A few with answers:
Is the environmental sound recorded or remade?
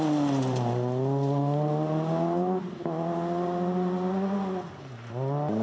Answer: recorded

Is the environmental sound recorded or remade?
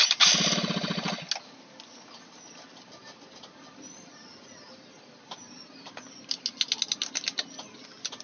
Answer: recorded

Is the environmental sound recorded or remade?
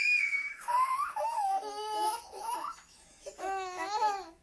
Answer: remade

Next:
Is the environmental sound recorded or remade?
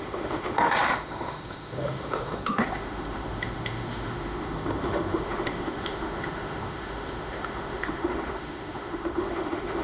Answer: remade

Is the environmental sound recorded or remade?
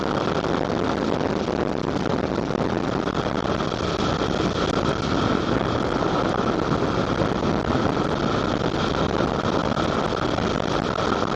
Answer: recorded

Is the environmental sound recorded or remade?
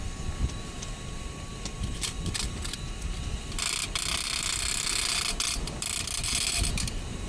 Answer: recorded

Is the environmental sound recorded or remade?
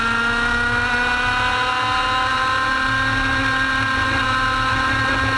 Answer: recorded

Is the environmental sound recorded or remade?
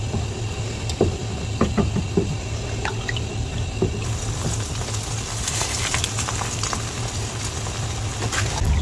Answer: recorded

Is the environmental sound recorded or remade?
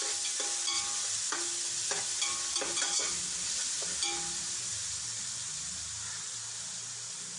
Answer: recorded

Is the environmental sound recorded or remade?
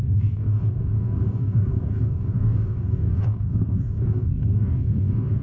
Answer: remade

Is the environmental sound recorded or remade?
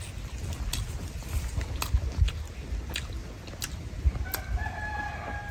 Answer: recorded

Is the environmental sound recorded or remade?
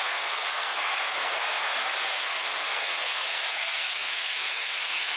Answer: remade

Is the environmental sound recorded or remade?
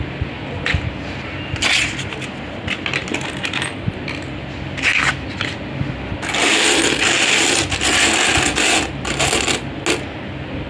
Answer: recorded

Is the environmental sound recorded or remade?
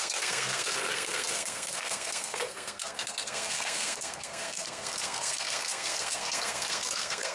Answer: remade